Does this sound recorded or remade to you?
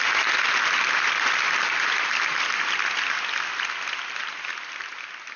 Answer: recorded